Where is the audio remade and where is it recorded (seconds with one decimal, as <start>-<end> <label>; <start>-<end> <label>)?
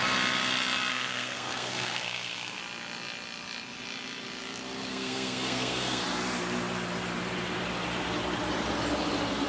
0.0-0.9 recorded; 0.9-2.6 remade; 2.6-4.9 recorded; 4.9-6.0 remade; 6.0-9.5 recorded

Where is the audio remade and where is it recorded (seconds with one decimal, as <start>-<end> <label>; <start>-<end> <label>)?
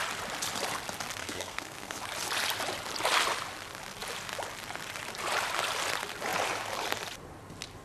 0.0-1.2 recorded; 1.2-1.9 remade; 1.9-7.8 recorded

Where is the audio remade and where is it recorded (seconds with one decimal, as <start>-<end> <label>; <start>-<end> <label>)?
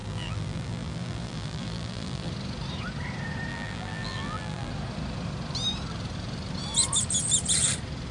0.0-2.3 remade; 2.3-3.5 recorded; 3.5-4.7 remade; 4.7-8.1 recorded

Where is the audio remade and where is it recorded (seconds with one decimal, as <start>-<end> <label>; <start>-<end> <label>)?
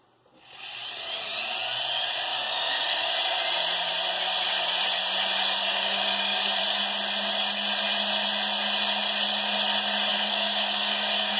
0.0-2.3 recorded; 2.3-3.1 remade; 3.1-5.6 recorded; 5.6-6.6 remade; 6.6-10.1 recorded; 10.1-11.4 remade